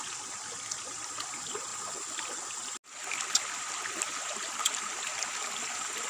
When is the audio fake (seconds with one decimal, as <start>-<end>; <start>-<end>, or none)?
none